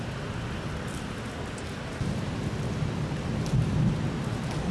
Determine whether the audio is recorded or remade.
recorded